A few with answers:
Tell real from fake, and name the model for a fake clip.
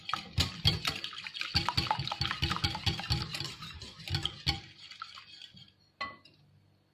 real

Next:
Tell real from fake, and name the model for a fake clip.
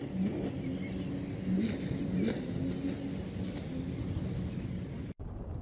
real